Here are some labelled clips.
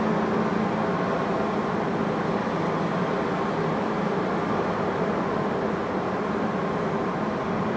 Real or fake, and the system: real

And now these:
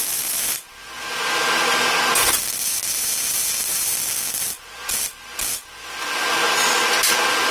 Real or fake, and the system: real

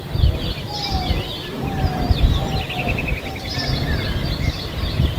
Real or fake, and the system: real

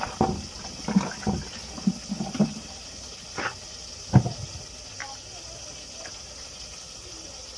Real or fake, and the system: real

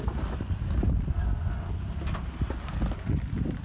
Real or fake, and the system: real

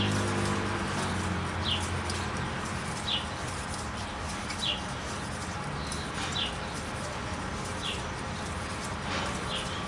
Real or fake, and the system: real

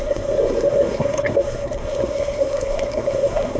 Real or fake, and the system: fake, codec, SNAC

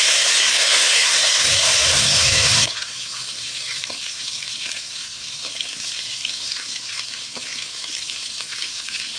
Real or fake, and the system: fake, codec, SNAC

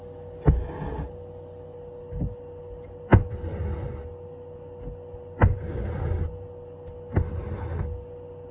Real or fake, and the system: real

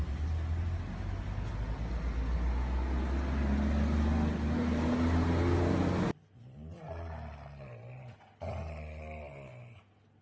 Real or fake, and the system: real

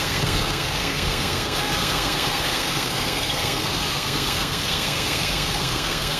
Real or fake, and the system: fake, codec, SNAC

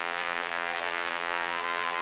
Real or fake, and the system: fake, vocoder, BigVGAN v2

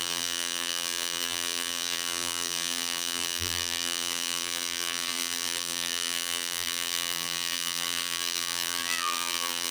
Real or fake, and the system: fake, vocoder, BigVGAN v2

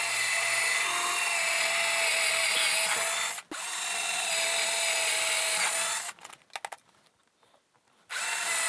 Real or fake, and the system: real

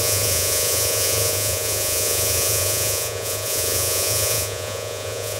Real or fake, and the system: fake, vocoder, Vocos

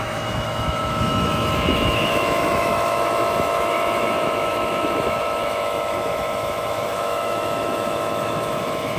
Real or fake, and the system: fake, autoencoder, DAC-VAE